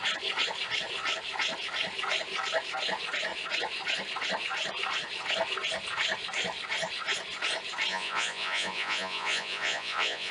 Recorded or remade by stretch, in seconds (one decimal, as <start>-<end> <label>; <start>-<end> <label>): 0.0-7.9 recorded; 7.9-10.3 remade